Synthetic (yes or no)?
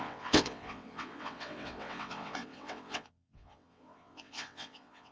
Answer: yes